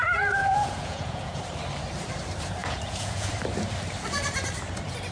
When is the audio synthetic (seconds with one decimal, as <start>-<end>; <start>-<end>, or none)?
0.4-1.4; 2.6-3.3